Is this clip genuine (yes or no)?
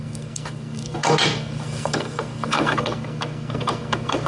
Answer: no